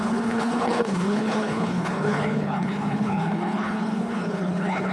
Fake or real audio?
fake